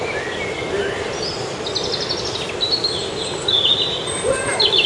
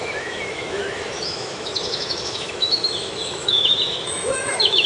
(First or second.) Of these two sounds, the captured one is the first